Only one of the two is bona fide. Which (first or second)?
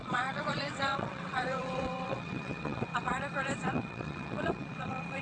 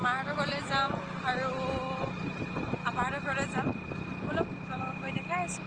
second